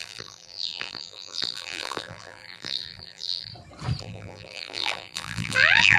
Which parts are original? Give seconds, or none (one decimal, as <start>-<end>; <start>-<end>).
3.5-4.0